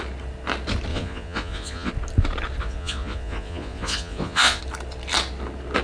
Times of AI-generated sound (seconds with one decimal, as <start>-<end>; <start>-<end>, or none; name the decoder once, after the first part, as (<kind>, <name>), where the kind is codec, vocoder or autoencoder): 0.9-1.9 (vocoder, Vocos); 2.6-4.6